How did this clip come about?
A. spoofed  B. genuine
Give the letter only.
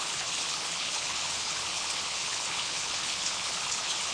A